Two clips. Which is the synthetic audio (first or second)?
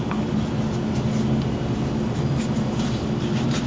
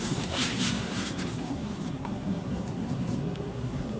second